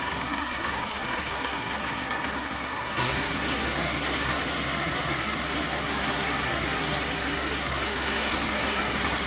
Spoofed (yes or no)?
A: yes